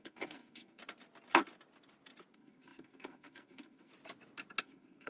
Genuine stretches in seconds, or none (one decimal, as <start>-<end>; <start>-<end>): 0.8-2.3; 3.9-4.6